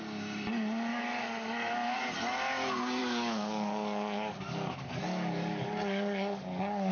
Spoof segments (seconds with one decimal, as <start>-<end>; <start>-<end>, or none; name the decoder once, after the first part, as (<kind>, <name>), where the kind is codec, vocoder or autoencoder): 0.9-2.0 (codec, DAC); 3.0-6.9